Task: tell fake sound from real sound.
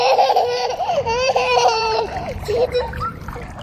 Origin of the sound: fake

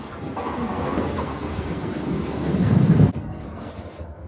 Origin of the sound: fake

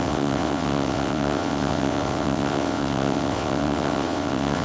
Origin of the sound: fake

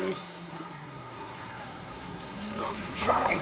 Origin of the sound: fake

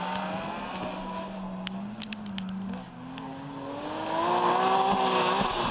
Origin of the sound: real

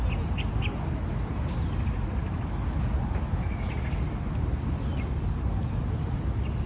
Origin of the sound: real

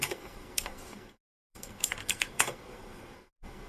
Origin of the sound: fake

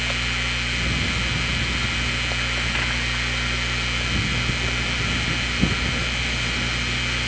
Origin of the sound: real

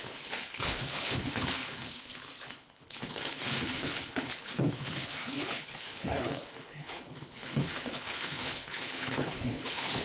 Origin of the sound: fake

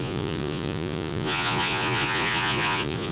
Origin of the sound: fake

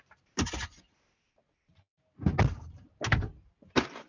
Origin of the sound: real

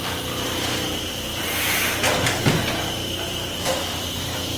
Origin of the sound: real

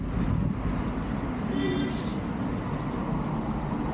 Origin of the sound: real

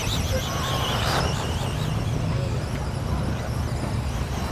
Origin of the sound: real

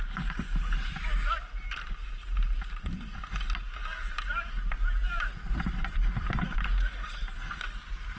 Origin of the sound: real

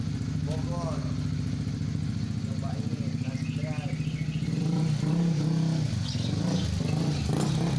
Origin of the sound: real